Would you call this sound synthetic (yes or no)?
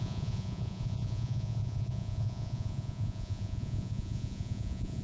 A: yes